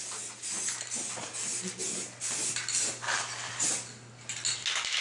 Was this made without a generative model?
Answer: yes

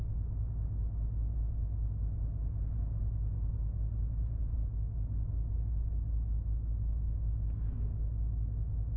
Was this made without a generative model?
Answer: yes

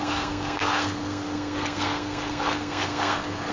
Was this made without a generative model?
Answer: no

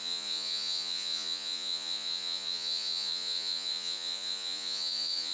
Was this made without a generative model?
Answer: no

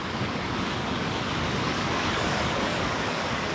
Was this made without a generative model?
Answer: no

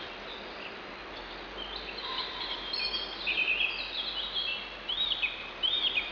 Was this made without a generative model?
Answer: yes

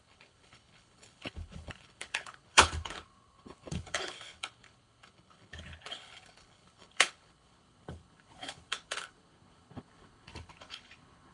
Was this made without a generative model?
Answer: no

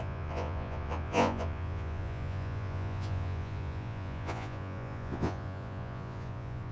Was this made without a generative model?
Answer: no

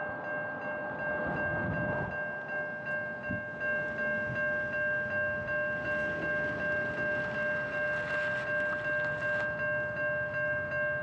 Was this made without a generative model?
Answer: yes